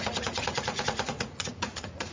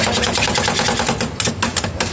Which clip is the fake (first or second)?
first